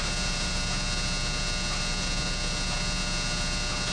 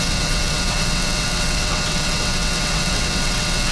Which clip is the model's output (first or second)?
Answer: second